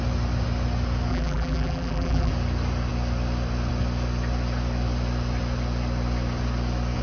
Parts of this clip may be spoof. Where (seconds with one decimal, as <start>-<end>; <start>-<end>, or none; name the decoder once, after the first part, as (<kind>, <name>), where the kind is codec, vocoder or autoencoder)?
1.1-2.3 (vocoder, BigVGAN v2)